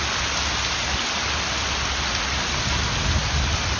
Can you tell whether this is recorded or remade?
recorded